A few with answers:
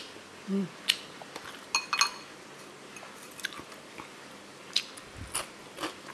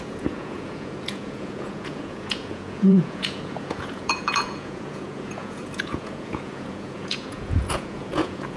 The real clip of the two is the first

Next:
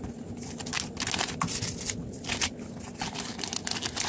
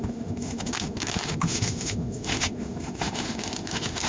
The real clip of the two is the first